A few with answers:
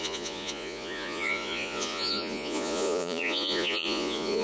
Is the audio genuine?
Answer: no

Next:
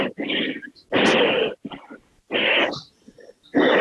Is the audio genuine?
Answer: yes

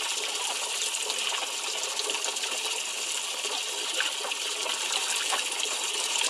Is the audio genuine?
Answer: yes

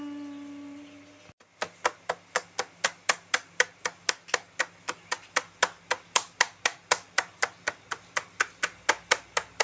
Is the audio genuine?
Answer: yes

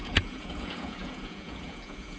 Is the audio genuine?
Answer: no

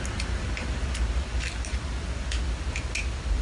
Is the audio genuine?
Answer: yes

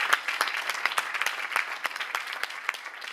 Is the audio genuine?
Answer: yes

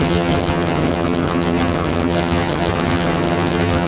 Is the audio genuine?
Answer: no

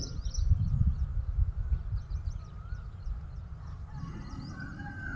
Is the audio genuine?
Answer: yes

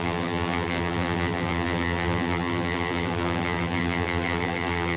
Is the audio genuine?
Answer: no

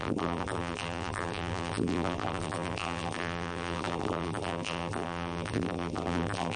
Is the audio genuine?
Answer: no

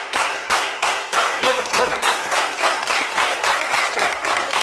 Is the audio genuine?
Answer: no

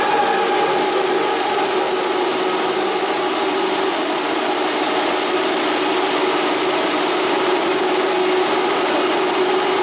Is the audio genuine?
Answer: yes